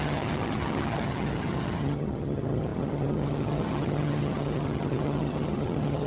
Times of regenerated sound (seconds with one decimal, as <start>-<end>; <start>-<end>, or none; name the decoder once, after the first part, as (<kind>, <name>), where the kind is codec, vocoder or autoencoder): 0.0-6.1 (vocoder, HiFi-GAN)